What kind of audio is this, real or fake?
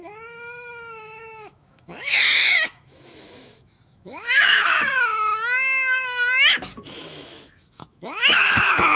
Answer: fake